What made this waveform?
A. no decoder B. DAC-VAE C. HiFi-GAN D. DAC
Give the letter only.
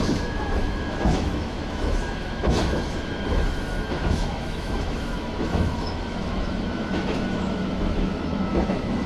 B